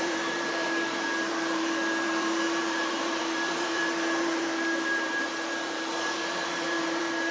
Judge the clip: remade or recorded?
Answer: remade